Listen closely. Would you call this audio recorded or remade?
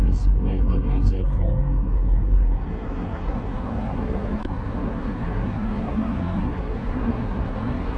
remade